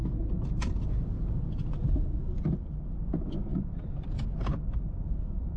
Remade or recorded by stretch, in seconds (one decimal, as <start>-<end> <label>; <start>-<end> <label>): 0.0-4.5 recorded; 4.5-5.6 remade